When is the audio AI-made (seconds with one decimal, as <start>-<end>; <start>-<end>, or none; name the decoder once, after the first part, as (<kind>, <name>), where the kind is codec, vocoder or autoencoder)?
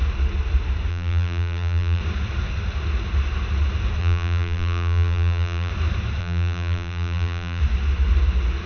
0.9-2.0 (vocoder, BigVGAN v2); 4.0-5.7; 6.2-7.6